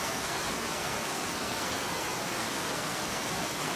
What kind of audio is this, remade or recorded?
remade